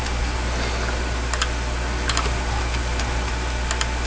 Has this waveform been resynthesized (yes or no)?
no